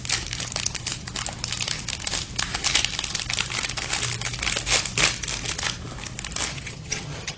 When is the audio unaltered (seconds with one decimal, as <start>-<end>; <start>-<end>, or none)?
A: 0.0-6.5